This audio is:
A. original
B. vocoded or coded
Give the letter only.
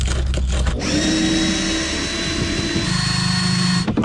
A